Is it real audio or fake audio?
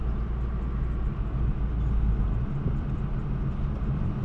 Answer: real